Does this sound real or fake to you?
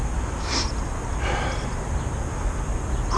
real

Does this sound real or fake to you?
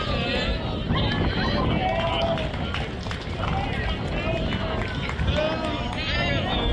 real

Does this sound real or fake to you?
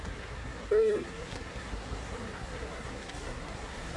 fake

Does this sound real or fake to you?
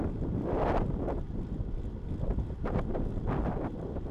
real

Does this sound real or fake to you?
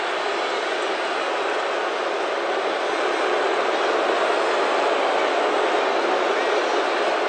real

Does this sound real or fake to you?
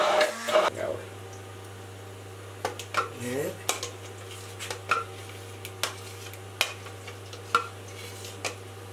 real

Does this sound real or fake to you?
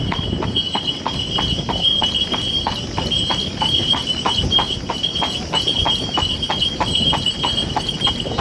real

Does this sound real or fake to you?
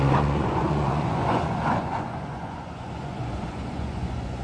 fake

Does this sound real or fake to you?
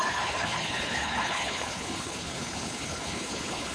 fake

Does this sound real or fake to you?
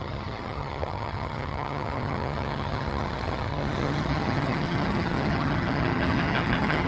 fake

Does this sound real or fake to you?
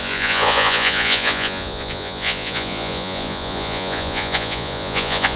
fake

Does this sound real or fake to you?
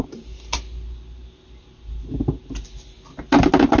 real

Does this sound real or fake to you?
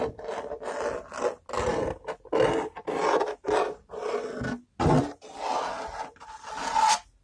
real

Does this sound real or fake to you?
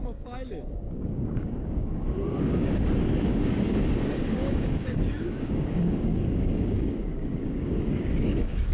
fake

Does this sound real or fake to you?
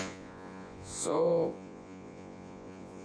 fake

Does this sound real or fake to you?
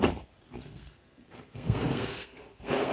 fake